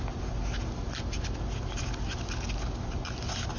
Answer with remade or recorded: recorded